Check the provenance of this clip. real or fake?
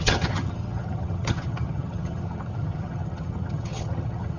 fake